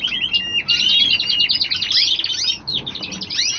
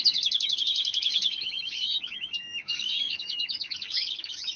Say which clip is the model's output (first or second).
second